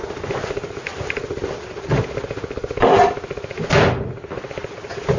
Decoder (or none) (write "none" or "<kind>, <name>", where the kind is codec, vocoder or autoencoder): none